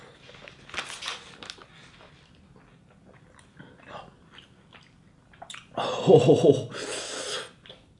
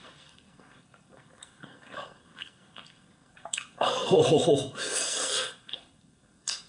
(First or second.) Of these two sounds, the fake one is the second